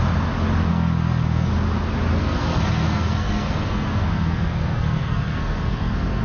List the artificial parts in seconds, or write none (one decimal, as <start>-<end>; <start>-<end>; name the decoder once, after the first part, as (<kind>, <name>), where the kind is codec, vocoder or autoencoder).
0.7-1.5 (codec, SNAC); 2.2-6.2